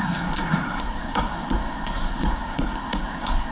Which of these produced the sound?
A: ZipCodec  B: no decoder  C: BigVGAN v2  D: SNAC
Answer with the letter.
D